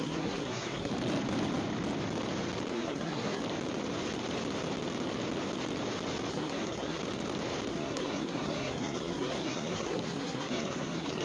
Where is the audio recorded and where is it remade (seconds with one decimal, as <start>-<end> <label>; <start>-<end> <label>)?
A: 0.0-0.9 remade; 0.9-2.7 recorded; 2.7-3.4 remade; 3.4-6.3 recorded; 6.3-7.0 remade; 7.0-7.7 recorded; 7.7-11.2 remade